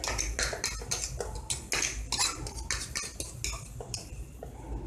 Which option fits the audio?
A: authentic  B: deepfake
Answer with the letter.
A